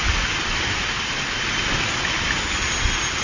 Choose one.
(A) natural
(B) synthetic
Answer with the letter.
A